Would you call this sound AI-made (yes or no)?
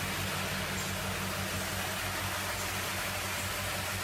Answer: no